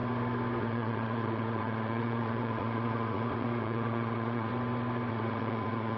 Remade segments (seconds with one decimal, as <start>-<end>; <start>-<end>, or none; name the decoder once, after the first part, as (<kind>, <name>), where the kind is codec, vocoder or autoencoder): 0.6-4.5 (vocoder, Vocos); 5.1-6.0